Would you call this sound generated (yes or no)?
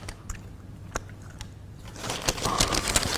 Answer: no